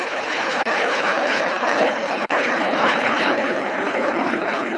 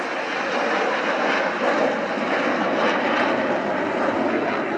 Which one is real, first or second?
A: second